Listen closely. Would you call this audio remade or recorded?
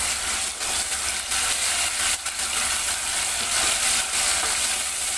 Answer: recorded